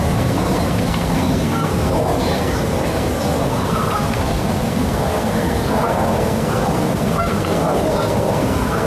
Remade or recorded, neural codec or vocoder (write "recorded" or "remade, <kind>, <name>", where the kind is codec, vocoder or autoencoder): remade, codec, SNAC